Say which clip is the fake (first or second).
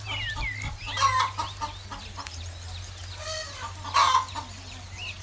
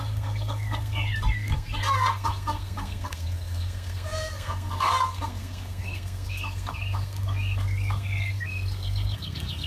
second